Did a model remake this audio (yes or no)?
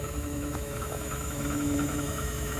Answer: yes